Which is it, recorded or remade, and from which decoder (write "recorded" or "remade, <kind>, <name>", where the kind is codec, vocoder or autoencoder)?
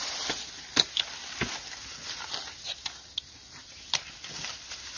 recorded